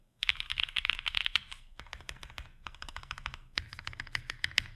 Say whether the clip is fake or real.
fake